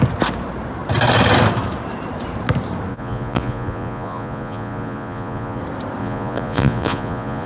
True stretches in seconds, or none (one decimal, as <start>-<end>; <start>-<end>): 0.0-2.9; 5.6-6.0